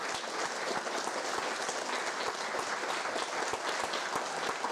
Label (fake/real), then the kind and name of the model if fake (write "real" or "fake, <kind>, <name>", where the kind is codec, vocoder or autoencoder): real